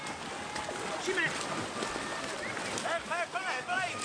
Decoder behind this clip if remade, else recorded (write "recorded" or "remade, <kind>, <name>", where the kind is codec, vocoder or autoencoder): recorded